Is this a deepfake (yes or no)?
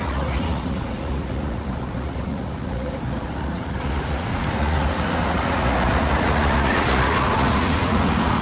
yes